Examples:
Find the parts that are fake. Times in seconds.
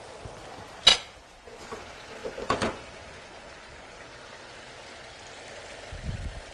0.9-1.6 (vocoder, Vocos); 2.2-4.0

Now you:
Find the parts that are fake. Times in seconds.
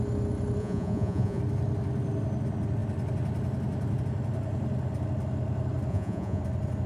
0.6-1.4 (vocoder, Vocos); 5.9-6.4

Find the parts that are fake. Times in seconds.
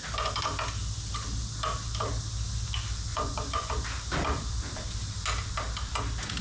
3.1-3.7 (vocoder, Vocos)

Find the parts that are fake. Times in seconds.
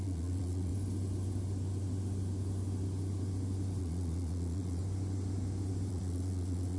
0.0-0.7 (vocoder, Vocos); 3.8-4.8; 5.9-6.8